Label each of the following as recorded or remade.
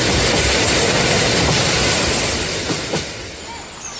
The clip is recorded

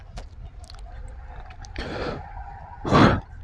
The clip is recorded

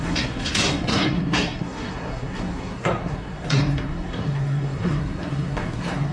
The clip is remade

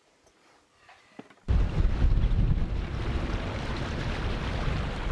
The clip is recorded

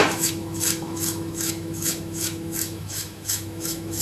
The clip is remade